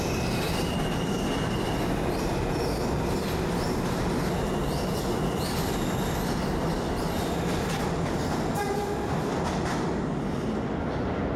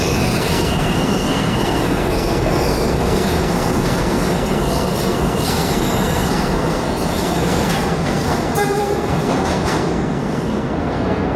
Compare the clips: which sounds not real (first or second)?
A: second